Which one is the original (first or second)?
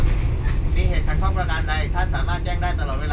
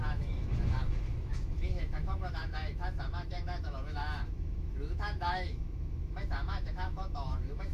first